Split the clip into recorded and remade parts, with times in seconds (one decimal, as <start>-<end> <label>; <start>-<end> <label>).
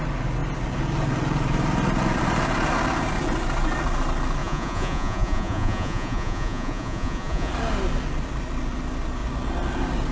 0.0-4.4 recorded; 4.4-7.5 remade; 7.5-10.1 recorded